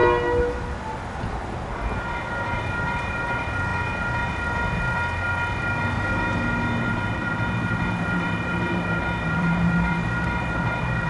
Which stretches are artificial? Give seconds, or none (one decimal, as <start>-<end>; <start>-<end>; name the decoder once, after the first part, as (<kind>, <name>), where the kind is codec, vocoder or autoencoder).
2.2-3.7 (vocoder, BigVGAN v2); 6.8-11.1